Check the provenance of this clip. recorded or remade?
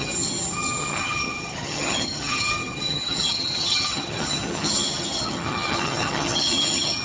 remade